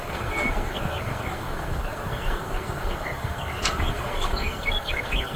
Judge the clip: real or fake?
fake